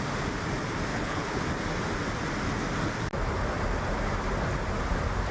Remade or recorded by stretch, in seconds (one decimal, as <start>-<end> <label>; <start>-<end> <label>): 0.0-0.9 recorded; 0.9-1.4 remade; 1.4-5.3 recorded